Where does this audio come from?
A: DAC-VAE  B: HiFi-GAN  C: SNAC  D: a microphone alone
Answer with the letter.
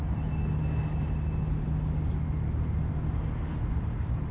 D